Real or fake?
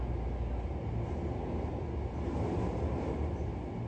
real